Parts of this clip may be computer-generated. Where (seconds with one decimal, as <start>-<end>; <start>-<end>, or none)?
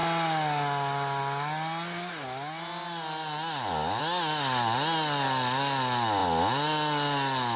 none